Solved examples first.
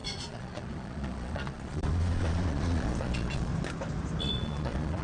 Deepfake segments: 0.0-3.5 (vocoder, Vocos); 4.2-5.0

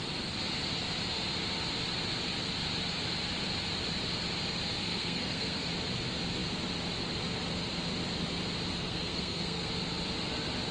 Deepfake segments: 4.8-5.7 (codec, SNAC); 8.7-9.7